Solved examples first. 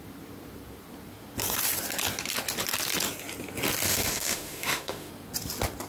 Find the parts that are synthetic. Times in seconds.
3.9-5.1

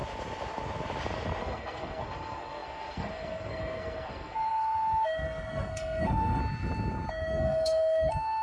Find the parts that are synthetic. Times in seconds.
1.4-6.4; 7.1-8.4

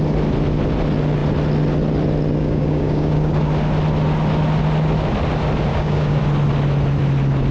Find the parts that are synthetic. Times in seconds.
2.4-3.5; 5.7-6.2

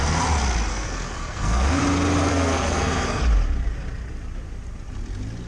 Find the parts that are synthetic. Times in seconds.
0.7-1.8; 2.3-3.2

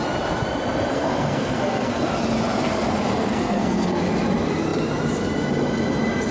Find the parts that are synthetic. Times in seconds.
0.9-2.1; 3.1-4.0